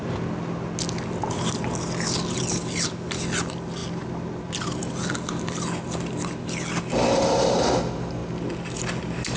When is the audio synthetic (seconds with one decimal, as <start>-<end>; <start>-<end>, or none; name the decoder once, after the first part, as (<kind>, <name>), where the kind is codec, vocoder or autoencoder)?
none

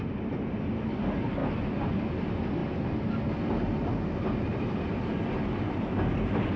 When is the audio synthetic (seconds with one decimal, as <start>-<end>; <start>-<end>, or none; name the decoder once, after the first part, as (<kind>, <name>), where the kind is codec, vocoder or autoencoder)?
none